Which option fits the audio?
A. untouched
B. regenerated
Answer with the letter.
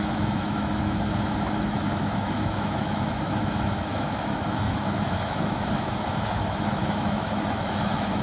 B